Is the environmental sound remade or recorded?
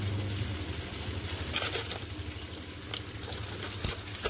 recorded